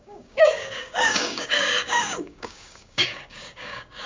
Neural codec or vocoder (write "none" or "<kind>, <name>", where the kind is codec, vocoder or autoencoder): codec, DAC